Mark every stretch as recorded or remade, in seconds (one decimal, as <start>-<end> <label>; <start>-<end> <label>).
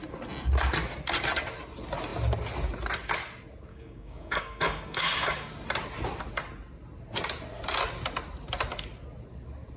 0.0-3.7 recorded; 3.7-5.5 remade; 5.5-9.8 recorded